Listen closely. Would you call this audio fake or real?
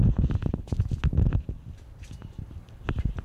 real